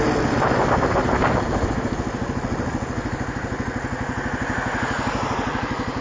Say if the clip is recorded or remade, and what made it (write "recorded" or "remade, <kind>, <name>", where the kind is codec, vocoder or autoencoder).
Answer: recorded